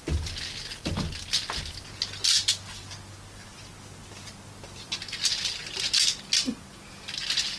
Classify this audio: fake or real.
real